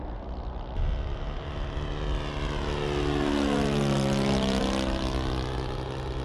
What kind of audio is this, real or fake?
real